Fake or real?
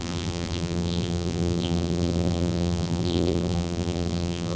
fake